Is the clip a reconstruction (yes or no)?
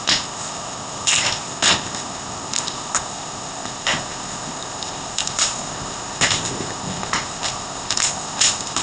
yes